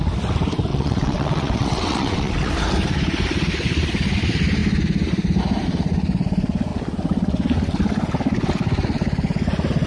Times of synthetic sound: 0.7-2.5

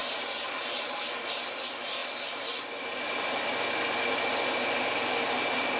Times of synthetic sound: 0.0-1.2